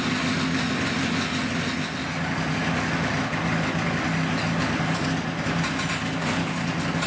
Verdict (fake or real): real